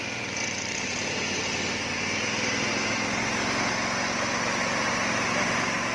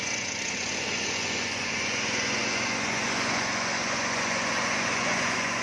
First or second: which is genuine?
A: first